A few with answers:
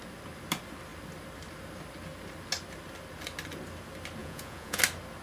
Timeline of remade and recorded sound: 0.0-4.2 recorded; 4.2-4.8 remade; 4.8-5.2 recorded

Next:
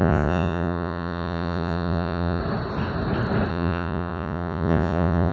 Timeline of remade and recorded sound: 0.0-2.4 remade; 2.4-3.5 recorded; 3.5-5.3 remade